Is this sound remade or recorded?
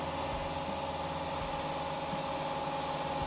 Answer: recorded